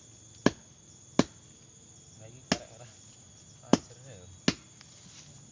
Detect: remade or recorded recorded